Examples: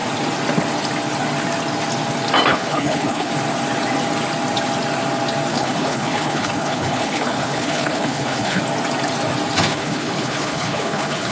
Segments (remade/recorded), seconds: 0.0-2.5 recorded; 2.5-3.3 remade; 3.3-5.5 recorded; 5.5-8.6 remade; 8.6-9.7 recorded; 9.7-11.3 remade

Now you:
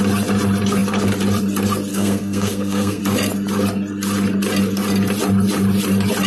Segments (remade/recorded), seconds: 0.0-1.9 recorded; 1.9-3.0 remade; 3.0-6.3 recorded

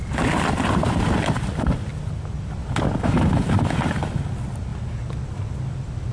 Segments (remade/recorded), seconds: 0.0-6.1 recorded

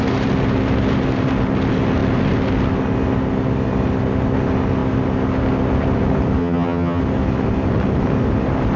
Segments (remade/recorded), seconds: 0.0-6.4 recorded; 6.4-7.0 remade; 7.0-8.8 recorded